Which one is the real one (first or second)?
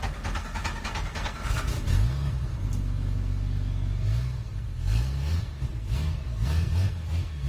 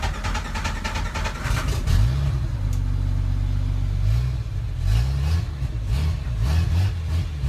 second